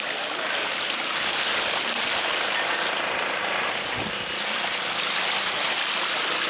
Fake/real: real